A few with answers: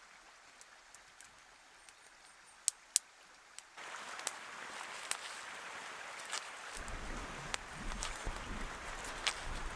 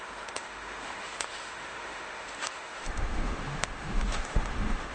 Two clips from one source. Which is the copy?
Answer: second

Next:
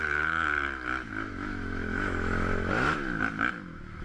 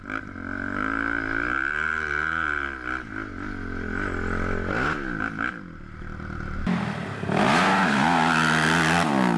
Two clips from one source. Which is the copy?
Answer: first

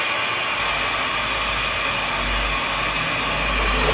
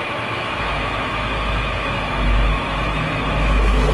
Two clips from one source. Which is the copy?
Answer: second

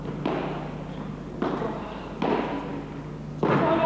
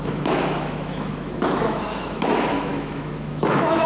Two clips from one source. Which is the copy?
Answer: second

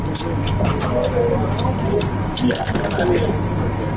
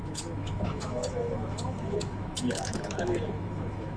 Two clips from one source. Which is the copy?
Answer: second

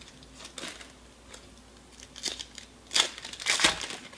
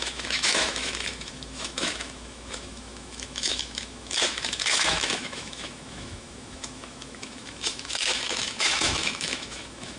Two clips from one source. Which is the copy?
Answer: second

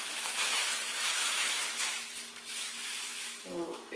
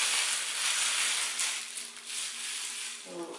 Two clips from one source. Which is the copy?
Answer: first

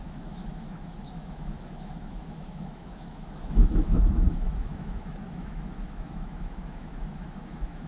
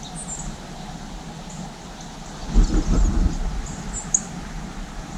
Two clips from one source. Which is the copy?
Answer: first